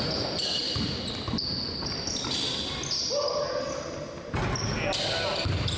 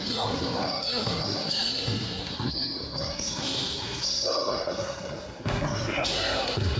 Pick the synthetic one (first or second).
second